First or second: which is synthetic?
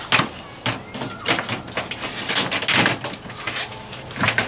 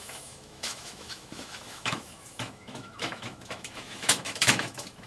second